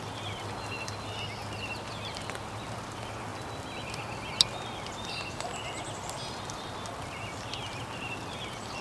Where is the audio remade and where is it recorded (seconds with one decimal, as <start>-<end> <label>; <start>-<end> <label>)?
0.0-8.8 recorded